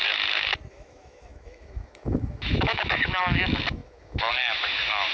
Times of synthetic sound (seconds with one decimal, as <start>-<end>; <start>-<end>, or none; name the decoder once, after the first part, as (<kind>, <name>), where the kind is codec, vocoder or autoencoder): 0.7-5.1 (autoencoder, DAC-VAE)

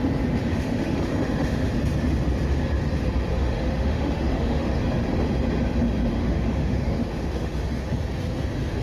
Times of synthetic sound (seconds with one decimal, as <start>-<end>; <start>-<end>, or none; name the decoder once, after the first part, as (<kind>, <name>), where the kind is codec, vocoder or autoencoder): 0.5-1.7 (autoencoder, DAC-VAE); 3.3-4.8; 6.2-7.6

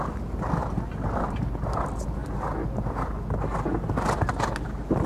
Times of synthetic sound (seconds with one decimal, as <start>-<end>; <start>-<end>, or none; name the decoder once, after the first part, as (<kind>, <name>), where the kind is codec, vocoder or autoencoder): none

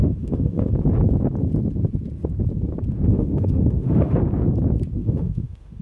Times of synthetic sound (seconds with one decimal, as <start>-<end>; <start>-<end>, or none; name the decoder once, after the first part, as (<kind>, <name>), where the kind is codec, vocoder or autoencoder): 0.0-0.7 (autoencoder, DAC-VAE); 3.1-4.2; 5.0-5.8

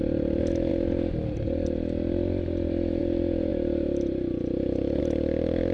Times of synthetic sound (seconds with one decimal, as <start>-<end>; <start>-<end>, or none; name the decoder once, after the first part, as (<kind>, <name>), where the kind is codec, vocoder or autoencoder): none